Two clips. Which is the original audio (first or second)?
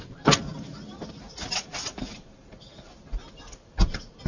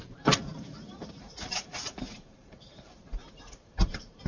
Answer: first